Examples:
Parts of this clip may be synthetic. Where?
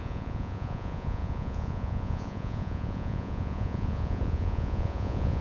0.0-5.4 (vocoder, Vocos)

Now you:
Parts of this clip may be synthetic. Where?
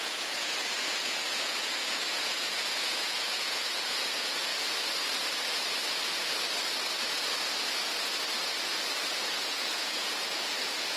0.0-4.5 (vocoder, Vocos); 9.2-11.0